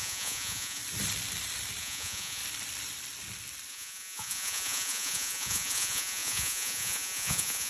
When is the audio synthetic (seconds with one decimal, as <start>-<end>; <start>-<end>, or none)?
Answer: 0.0-0.8; 1.8-2.4; 3.7-7.7